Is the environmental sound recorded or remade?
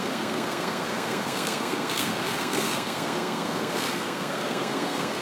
remade